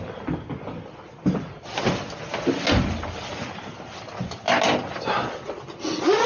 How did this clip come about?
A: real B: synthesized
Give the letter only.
A